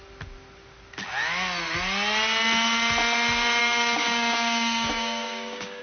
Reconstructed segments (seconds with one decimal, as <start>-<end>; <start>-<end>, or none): 3.6-5.8